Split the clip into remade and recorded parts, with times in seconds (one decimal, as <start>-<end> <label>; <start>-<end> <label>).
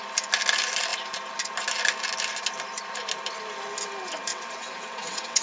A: 0.0-4.3 recorded; 4.3-5.4 remade